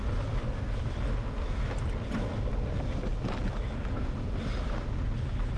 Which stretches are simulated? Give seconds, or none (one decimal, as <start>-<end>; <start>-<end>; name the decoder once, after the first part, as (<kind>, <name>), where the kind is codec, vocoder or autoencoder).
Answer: none